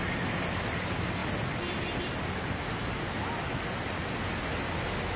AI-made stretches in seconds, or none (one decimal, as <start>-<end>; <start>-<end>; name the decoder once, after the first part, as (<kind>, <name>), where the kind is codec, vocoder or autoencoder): none

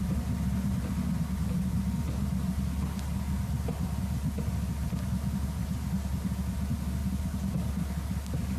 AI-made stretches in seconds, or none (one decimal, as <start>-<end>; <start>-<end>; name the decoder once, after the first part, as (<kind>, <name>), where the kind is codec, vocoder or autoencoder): none

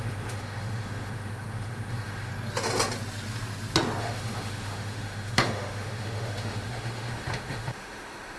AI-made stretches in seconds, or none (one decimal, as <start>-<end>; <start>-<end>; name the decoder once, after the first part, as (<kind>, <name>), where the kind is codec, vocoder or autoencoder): 0.0-2.3 (autoencoder, DAC-VAE); 4.0-8.4